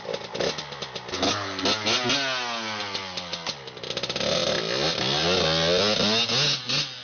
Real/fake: real